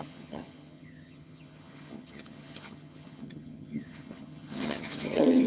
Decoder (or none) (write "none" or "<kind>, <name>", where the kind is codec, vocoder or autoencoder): vocoder, HiFi-GAN